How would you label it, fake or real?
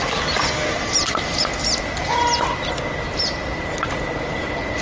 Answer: real